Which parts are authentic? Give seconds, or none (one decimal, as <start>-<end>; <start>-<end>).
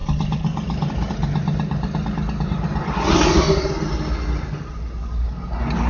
0.0-5.9